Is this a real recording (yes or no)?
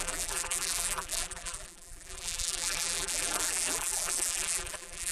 no